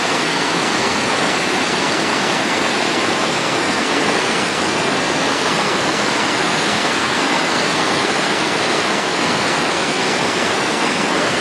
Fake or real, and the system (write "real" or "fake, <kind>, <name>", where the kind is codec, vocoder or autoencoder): fake, codec, SNAC